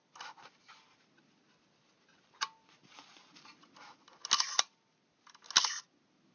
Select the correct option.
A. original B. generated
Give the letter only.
A